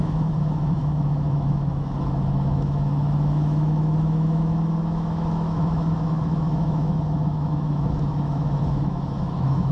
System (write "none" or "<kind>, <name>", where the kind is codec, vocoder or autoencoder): autoencoder, DAC-VAE